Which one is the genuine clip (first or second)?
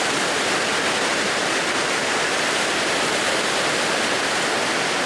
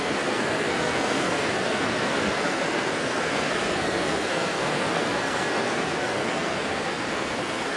first